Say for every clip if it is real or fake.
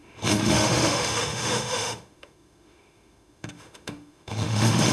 fake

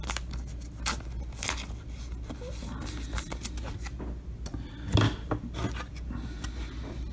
real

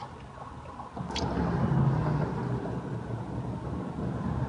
real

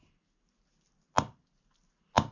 real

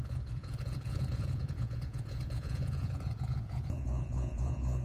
fake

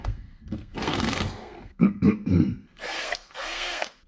fake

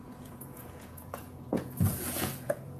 fake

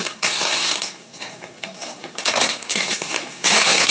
fake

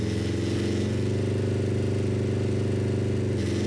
real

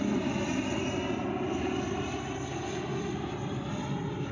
real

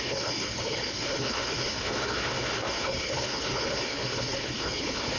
fake